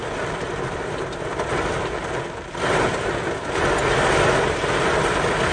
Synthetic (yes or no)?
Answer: no